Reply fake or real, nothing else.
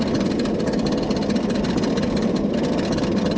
real